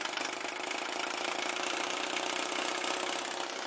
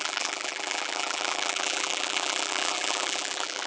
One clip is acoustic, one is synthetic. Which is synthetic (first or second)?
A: second